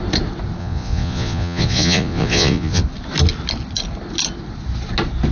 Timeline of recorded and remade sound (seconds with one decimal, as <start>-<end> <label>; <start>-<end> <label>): 0.0-0.6 recorded; 0.6-2.8 remade; 2.8-5.3 recorded